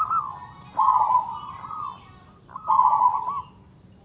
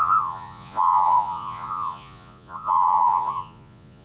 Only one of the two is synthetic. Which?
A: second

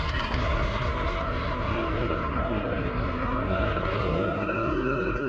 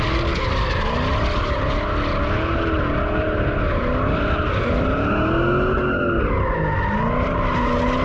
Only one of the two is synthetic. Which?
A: first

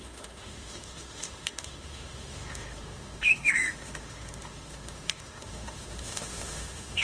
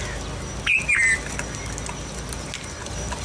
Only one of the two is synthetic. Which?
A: first